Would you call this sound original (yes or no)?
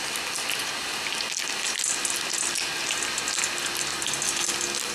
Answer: yes